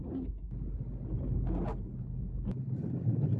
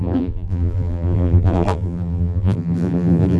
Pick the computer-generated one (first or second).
second